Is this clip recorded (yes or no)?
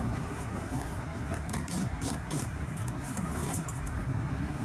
no